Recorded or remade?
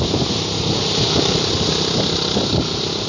recorded